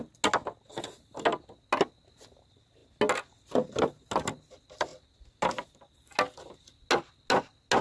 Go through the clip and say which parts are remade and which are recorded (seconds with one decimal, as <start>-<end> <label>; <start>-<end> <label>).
0.0-7.8 recorded